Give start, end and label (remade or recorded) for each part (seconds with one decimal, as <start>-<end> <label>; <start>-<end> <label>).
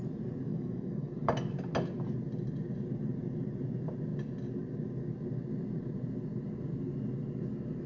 0.0-0.5 recorded; 0.5-1.1 remade; 1.1-7.9 recorded